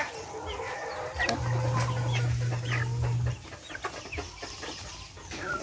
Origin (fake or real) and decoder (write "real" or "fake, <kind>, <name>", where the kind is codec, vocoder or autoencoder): real